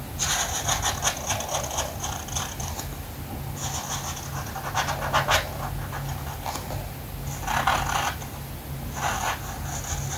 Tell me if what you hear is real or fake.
real